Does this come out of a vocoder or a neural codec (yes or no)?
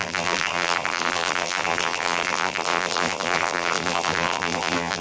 yes